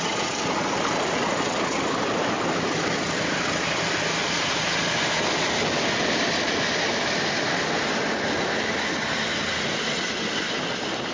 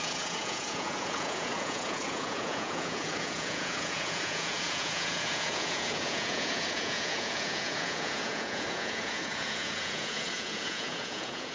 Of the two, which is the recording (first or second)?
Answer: first